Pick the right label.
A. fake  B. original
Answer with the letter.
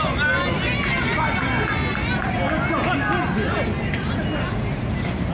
B